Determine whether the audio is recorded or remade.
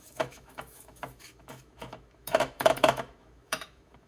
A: remade